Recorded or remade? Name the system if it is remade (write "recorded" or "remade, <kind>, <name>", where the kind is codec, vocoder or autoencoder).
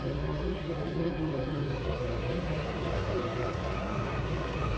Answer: remade, codec, SNAC